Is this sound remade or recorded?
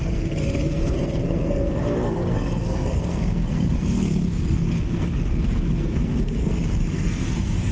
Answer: remade